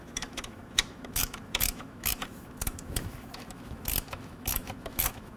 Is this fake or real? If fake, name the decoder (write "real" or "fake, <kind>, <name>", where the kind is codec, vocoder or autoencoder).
fake, autoencoder, DAC-VAE